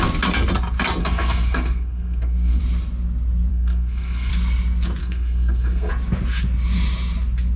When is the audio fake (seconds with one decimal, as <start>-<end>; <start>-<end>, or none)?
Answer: 1.0-2.6; 3.5-4.3; 5.0-5.9